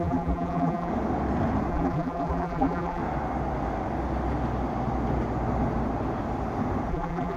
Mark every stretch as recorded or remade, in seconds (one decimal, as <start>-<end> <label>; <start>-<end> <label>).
0.0-0.9 remade; 0.9-1.7 recorded; 1.7-3.0 remade; 3.0-6.9 recorded; 6.9-7.4 remade